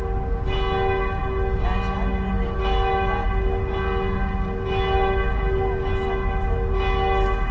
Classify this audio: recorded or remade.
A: recorded